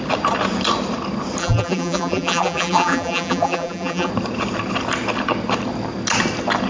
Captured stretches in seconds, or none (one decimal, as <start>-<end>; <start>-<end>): 0.0-1.4; 4.1-6.7